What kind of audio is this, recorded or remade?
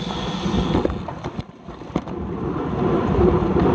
recorded